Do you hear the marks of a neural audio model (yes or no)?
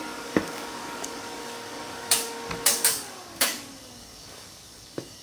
yes